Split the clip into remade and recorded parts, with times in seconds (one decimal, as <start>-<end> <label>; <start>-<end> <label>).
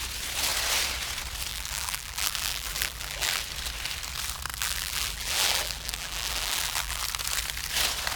0.0-1.5 recorded; 1.5-3.4 remade; 3.4-4.5 recorded; 4.5-7.0 remade; 7.0-8.2 recorded